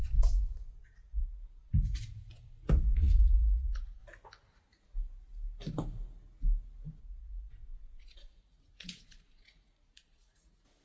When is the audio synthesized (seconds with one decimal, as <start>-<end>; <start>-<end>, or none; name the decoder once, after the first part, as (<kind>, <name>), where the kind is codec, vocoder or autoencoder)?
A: 0.0-4.0 (vocoder, Vocos); 7.0-10.8